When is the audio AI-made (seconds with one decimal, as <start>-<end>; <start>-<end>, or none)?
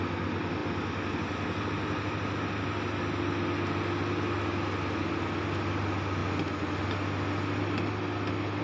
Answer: none